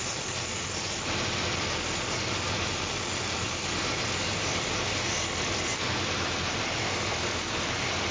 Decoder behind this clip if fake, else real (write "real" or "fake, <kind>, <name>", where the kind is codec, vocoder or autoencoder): real